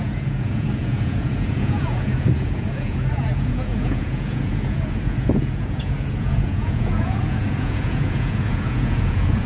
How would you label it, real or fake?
fake